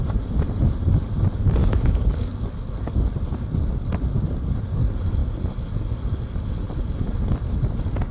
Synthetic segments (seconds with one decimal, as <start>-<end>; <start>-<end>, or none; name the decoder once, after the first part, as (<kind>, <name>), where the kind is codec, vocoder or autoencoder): 1.6-2.4 (codec, DAC)